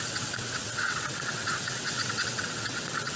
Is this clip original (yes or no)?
no